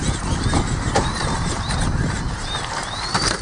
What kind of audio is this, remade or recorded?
remade